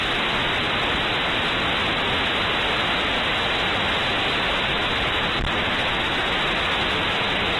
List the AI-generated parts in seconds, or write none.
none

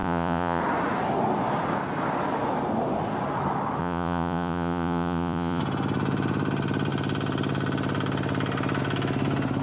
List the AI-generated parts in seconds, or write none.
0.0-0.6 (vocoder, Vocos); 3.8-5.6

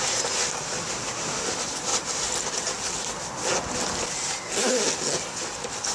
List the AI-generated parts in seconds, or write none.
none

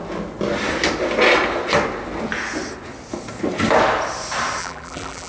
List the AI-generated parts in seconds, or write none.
4.6-5.3 (vocoder, BigVGAN v2)

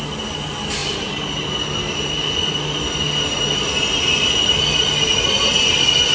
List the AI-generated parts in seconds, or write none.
none

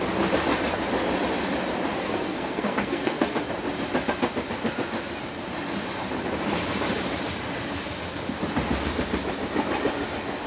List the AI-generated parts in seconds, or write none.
1.9-3.4 (codec, SNAC)

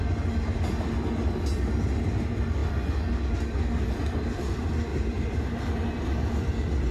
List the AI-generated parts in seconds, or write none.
4.9-5.6 (vocoder, BigVGAN v2)